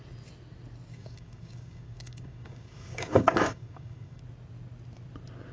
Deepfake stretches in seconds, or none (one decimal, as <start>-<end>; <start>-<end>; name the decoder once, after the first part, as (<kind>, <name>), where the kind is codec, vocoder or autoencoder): 0.9-4.2 (codec, DAC)